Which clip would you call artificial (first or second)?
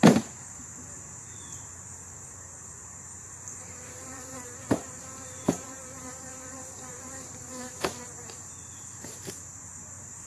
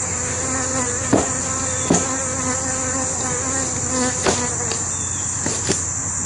first